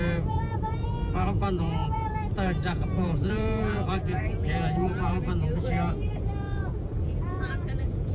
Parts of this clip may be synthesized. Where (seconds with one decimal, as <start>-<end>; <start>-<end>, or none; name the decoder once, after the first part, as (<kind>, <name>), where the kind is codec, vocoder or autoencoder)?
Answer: 0.0-8.1 (vocoder, Vocos)